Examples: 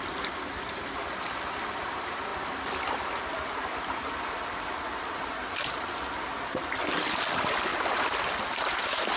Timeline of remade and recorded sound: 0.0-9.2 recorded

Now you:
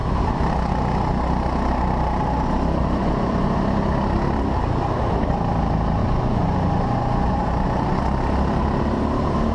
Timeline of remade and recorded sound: 0.0-2.8 recorded; 2.8-3.6 remade; 3.6-6.0 recorded; 6.0-8.0 remade; 8.0-9.5 recorded